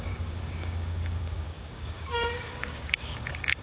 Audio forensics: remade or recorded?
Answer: remade